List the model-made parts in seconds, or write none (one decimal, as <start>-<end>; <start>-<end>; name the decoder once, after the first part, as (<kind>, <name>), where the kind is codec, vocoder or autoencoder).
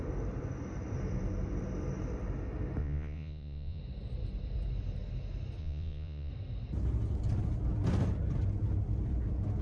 2.8-3.8 (vocoder, Vocos); 5.6-6.3